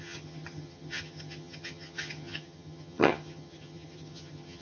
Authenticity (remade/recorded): remade